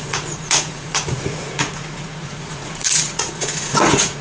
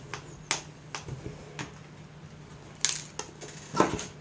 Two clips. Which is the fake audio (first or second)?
first